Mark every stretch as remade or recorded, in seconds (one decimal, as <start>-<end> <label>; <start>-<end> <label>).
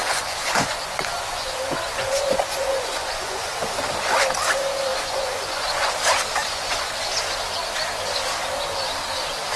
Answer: 0.0-3.5 remade; 3.5-4.9 recorded; 4.9-5.9 remade; 5.9-6.4 recorded; 6.4-6.9 remade; 6.9-9.6 recorded